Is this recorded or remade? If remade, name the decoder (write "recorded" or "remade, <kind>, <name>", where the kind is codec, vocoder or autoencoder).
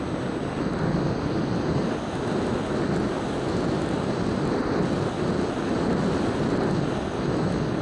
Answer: recorded